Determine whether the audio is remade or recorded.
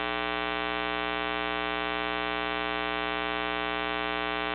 recorded